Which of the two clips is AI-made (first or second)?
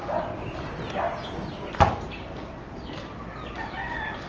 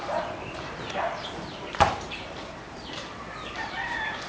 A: second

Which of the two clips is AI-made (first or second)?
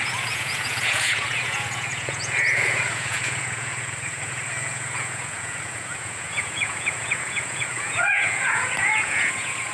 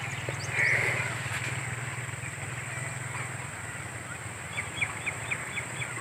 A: first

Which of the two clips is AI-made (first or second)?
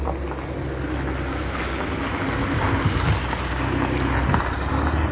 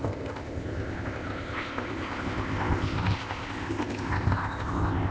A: second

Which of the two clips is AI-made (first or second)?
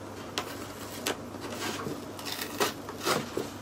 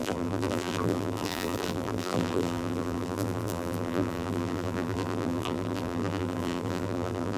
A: second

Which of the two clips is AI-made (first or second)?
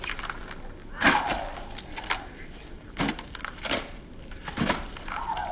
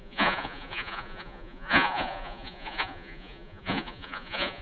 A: second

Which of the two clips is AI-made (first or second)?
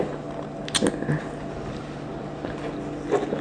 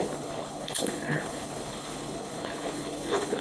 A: second